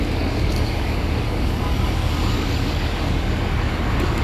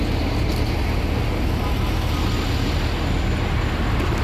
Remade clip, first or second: first